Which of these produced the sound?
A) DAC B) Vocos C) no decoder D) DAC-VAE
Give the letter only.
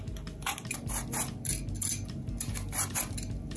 C